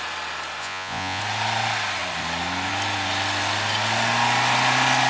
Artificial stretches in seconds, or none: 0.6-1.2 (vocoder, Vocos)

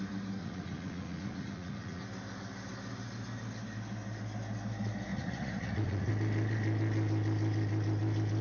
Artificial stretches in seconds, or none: 0.4-2.0 (vocoder, Vocos); 5.1-6.1

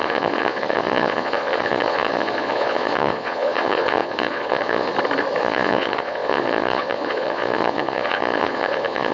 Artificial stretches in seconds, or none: 0.0-4.9 (vocoder, Vocos); 5.4-9.1

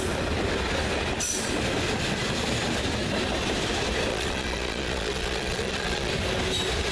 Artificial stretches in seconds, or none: 4.1-6.1 (vocoder, Vocos)

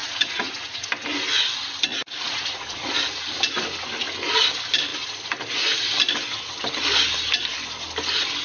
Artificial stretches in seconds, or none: 0.0-0.9 (vocoder, Vocos); 1.9-2.9

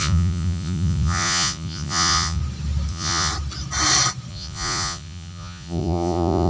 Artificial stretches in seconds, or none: 0.0-2.4 (vocoder, Vocos); 2.9-3.3; 4.3-6.5

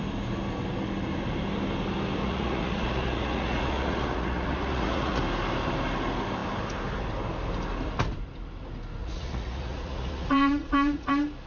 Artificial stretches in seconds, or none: 2.2-5.2 (vocoder, Vocos); 9.0-11.1

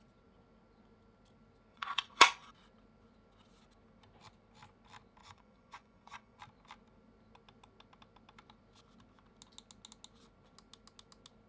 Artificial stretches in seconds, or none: 1.7-2.5 (vocoder, Vocos); 5.2-6.4